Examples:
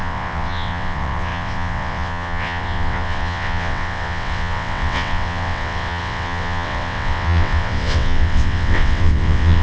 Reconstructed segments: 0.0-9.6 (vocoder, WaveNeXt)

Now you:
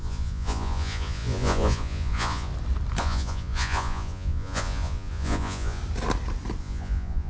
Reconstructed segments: 0.0-2.5 (vocoder, Vocos); 3.0-5.8; 6.6-7.3

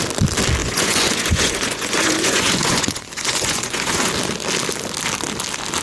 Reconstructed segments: 0.6-4.1 (vocoder, Vocos)

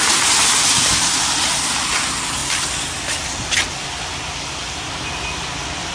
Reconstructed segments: none